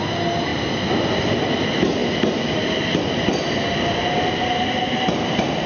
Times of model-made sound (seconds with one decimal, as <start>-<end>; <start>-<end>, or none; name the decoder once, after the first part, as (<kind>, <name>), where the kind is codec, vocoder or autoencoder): none